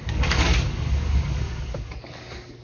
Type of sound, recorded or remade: remade